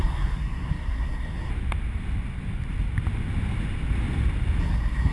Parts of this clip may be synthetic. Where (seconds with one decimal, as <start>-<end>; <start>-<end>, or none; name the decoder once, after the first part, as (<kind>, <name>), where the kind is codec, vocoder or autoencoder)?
0.0-1.5 (codec, SNAC); 4.6-5.1